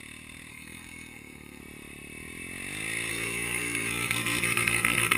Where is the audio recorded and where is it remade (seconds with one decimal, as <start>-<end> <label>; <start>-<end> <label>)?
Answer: 0.0-0.5 recorded; 0.5-1.6 remade; 1.6-3.1 recorded; 3.1-5.2 remade